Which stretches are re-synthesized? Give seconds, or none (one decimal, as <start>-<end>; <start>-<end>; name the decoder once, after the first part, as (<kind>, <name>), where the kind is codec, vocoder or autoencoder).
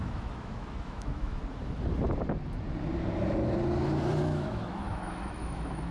0.0-1.4 (autoencoder, DAC-VAE); 4.2-5.9